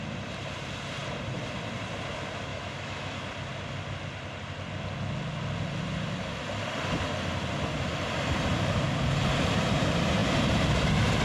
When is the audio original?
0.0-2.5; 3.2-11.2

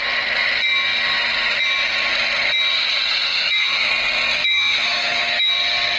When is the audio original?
0.0-3.3; 3.9-4.4; 5.5-6.0

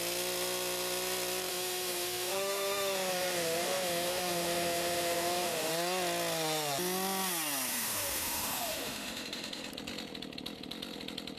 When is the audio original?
0.0-1.5; 5.7-7.7; 9.7-11.4

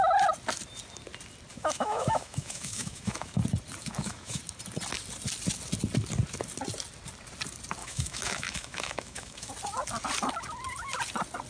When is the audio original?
0.0-1.5; 3.4-3.8; 4.4-7.8; 9.5-11.5

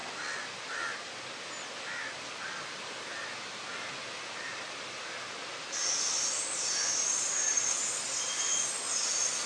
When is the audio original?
0.0-9.5

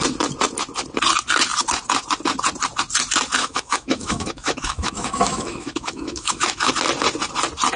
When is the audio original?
0.0-3.4; 6.7-7.8

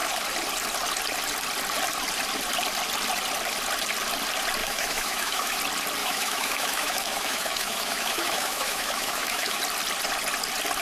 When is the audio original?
0.0-4.6; 5.6-6.0; 9.6-10.8